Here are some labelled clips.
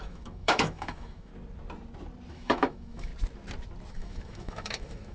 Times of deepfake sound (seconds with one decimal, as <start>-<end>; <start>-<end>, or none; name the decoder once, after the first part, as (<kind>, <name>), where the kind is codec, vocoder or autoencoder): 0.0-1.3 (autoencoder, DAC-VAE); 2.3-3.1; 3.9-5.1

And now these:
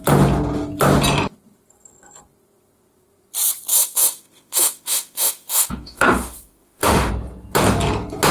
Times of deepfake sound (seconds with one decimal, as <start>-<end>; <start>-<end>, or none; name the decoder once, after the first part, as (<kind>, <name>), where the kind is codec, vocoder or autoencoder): 3.7-7.1 (autoencoder, DAC-VAE)

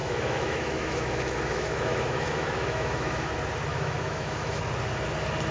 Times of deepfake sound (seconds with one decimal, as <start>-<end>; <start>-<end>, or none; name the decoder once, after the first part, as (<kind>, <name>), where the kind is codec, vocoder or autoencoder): 0.0-3.3 (autoencoder, DAC-VAE); 3.7-4.6